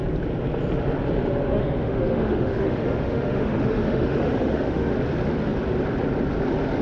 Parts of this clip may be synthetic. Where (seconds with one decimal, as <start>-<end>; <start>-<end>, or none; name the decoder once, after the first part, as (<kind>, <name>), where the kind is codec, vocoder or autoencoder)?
1.6-4.9 (autoencoder, DAC-VAE)